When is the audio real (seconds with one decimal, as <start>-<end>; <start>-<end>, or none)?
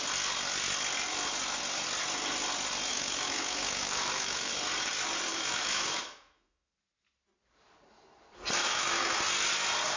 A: 0.0-2.9; 4.5-5.3; 6.7-8.6; 9.1-10.0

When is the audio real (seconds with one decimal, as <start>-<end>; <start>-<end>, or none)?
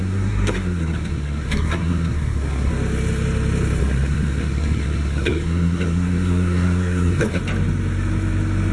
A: 2.7-3.8; 7.4-8.7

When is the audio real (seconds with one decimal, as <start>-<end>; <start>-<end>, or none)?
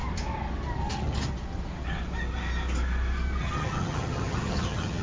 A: 0.0-0.9; 1.3-3.4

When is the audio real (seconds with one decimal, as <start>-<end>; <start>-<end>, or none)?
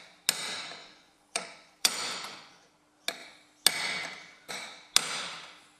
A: 0.0-0.8; 2.7-5.8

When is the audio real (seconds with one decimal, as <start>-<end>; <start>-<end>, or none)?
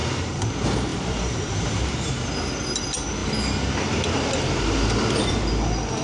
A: 0.5-0.9; 2.3-6.0